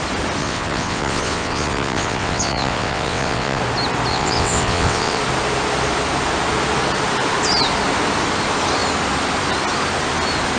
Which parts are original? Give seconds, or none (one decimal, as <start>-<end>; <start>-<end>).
0.0-0.4; 3.6-4.1; 5.2-10.6